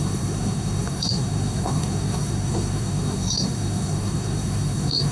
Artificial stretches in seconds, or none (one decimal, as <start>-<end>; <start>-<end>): 0.0-5.1